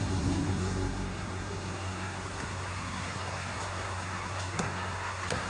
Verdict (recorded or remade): remade